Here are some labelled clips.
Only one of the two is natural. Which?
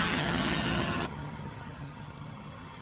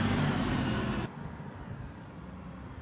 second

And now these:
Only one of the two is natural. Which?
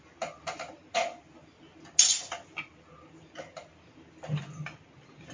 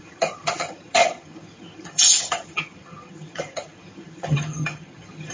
first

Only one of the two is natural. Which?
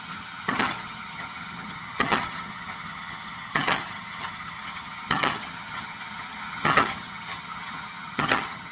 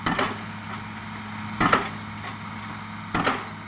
second